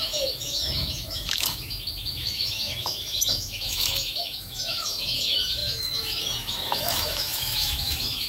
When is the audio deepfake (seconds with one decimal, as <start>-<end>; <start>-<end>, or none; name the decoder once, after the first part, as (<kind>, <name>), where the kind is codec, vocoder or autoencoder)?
0.0-8.3 (autoencoder, DAC-VAE)